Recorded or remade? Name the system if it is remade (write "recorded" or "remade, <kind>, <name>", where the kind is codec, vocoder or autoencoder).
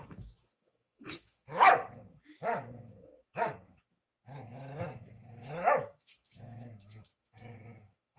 remade, autoencoder, DAC-VAE